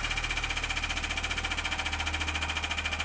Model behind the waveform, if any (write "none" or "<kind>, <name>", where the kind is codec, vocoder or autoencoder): none